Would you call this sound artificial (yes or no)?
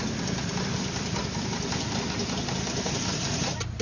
no